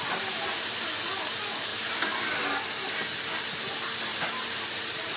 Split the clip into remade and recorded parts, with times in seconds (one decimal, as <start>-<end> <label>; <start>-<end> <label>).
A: 0.0-1.7 recorded; 1.7-2.3 remade; 2.3-4.1 recorded; 4.1-5.2 remade